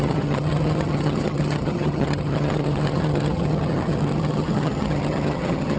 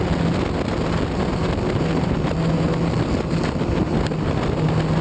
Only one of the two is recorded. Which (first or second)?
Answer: second